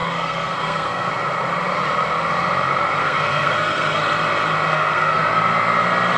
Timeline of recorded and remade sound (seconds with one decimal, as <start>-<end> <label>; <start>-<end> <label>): 0.0-1.1 remade; 1.1-3.0 recorded; 3.0-4.0 remade; 4.0-4.7 recorded; 4.7-5.2 remade; 5.2-6.2 recorded